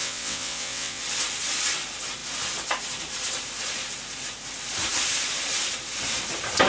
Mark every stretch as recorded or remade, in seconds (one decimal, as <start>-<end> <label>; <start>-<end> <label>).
0.0-1.0 remade; 1.0-6.7 recorded